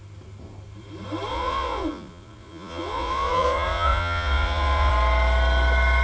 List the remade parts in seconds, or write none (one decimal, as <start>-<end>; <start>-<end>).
1.3-4.9